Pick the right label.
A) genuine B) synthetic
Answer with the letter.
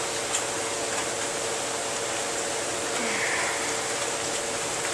A